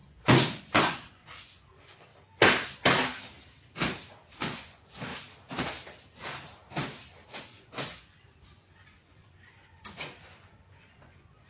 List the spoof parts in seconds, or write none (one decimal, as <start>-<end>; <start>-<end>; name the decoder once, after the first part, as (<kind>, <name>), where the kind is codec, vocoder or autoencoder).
0.0-2.1 (vocoder, Vocos); 4.3-5.1; 7.4-11.5